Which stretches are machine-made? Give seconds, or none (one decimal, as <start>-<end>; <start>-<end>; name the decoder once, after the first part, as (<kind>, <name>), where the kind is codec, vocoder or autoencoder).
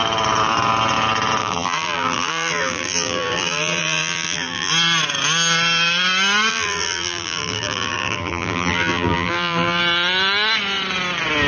1.4-4.7 (vocoder, BigVGAN v2); 6.5-9.8